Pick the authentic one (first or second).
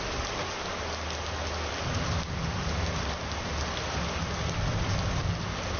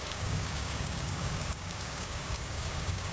first